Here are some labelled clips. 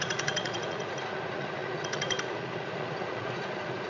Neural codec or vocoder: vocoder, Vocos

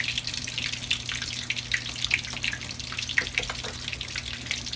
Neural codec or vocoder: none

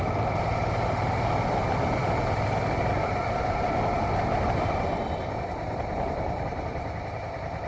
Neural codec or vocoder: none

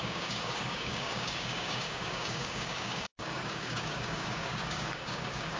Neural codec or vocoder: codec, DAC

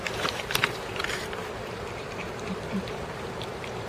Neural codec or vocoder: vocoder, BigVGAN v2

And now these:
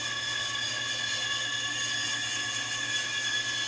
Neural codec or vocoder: none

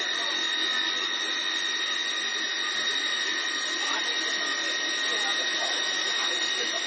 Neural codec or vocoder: none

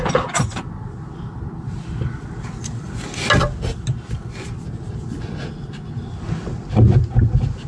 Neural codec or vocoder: none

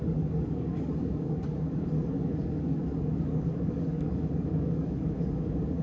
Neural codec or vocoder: codec, DAC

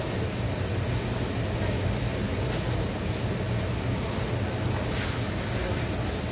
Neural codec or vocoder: none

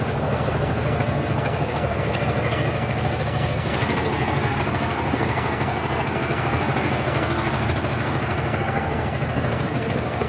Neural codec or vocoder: codec, SNAC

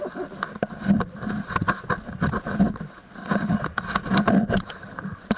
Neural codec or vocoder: none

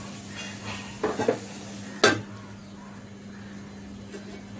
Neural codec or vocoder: none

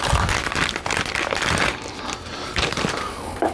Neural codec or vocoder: none